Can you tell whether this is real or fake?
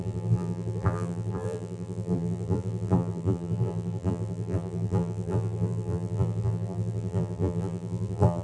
fake